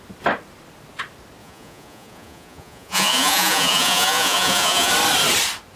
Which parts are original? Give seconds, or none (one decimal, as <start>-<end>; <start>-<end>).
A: 0.0-1.4; 4.9-5.8